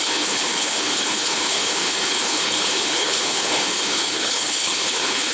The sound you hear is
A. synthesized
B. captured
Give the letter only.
A